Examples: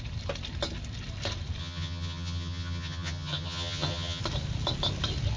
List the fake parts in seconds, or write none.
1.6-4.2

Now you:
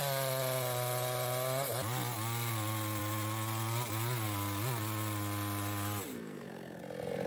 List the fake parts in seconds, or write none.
6.1-6.8

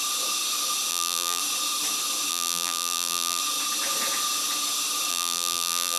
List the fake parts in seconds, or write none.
0.9-1.4; 2.3-3.4; 5.1-6.0